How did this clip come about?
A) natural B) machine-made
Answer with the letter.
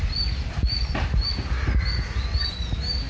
A